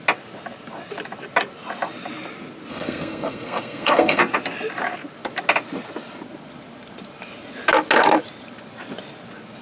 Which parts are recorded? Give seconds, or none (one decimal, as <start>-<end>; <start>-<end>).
0.0-2.7; 4.2-9.6